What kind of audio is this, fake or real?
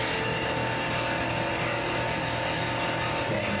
real